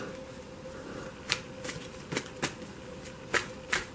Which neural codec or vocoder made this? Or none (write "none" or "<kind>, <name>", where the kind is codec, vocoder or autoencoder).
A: none